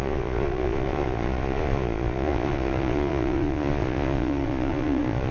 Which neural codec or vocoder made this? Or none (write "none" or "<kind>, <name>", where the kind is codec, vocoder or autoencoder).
vocoder, Vocos